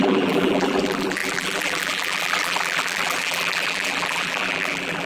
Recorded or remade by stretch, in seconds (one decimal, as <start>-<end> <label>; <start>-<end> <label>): 0.0-5.1 remade